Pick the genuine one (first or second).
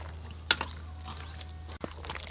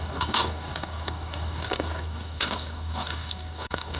first